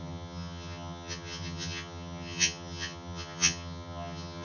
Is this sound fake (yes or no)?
yes